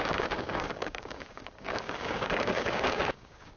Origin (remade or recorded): remade